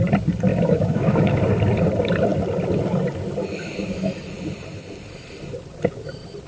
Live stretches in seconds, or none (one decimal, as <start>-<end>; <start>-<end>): 0.0-0.5; 1.4-6.5